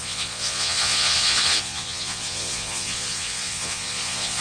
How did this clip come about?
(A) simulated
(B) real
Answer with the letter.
A